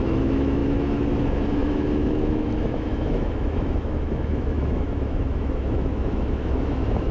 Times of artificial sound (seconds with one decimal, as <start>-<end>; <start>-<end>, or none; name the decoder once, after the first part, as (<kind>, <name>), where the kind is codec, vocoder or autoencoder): 0.0-7.1 (autoencoder, DAC-VAE)